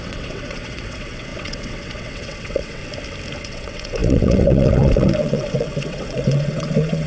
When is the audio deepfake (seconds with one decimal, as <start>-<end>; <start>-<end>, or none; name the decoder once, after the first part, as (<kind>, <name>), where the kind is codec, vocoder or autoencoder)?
0.0-2.8 (vocoder, WaveNeXt); 3.4-7.1